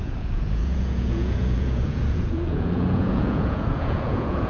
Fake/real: fake